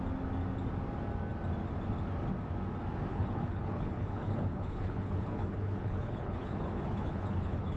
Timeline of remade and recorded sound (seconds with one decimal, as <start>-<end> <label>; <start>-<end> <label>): 0.0-3.1 recorded; 3.1-7.8 remade